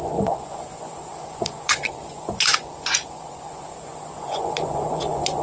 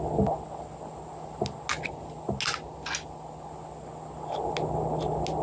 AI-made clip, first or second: first